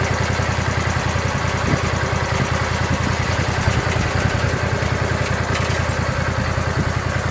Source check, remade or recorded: recorded